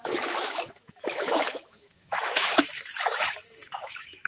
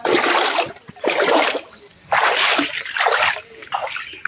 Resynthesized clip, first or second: first